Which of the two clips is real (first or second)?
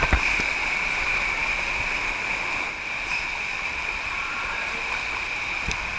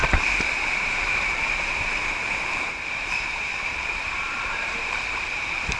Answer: first